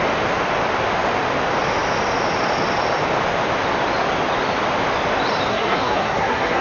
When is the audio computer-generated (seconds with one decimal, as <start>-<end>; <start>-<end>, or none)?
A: 5.5-6.6